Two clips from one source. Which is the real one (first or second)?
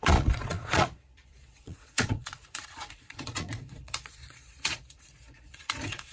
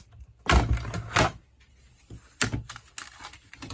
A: second